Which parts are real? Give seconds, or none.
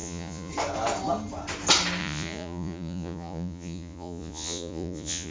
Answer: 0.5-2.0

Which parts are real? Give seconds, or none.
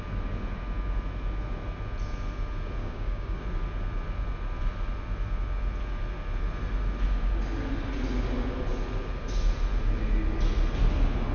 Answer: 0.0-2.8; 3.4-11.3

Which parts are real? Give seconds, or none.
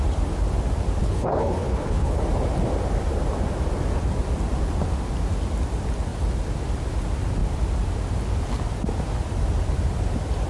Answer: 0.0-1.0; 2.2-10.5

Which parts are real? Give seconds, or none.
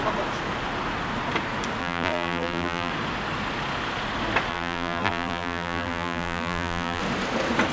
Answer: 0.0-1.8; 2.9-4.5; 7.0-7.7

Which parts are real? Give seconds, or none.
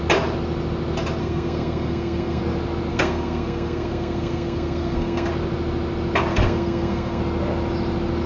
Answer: 0.0-1.2; 2.4-2.9; 5.3-6.3; 7.2-8.3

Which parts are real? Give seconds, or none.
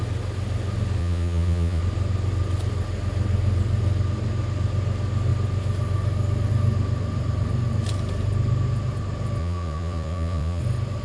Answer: 0.0-1.0; 1.8-9.4; 10.6-11.0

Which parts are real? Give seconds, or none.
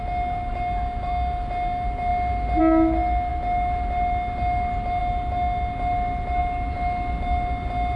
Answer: 0.0-8.0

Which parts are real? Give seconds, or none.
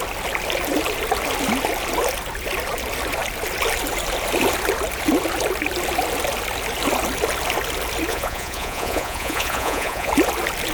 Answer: 0.0-8.1; 10.1-10.7